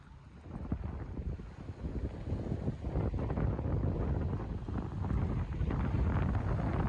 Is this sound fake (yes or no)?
no